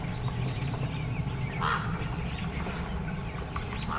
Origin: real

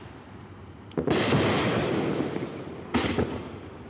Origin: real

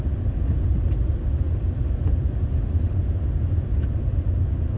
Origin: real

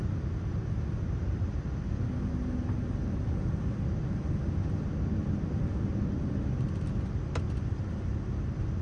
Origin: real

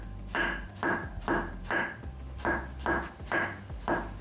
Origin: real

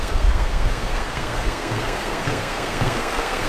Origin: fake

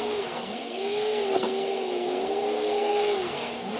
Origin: fake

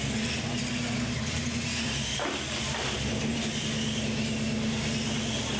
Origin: real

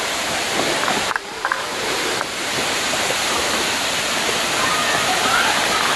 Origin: real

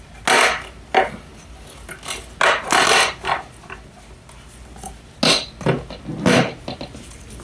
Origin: real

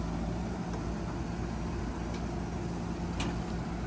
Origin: real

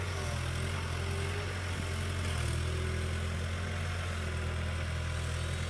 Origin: real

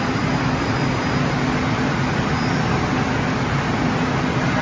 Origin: real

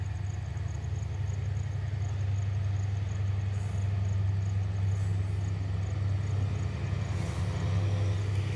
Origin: real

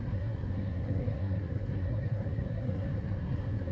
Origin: fake